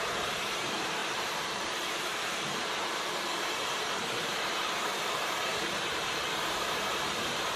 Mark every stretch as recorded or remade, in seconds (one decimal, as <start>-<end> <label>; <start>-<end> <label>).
0.0-7.6 remade